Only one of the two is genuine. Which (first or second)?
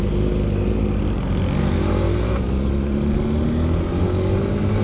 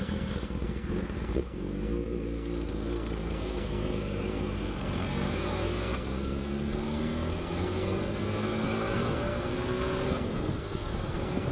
first